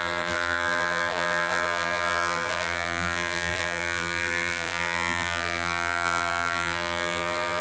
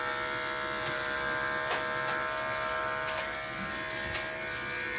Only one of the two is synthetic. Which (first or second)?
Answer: first